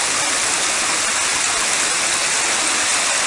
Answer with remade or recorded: recorded